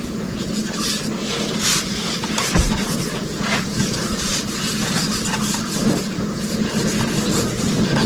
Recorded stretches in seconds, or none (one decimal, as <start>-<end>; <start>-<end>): 0.6-2.9; 4.3-8.1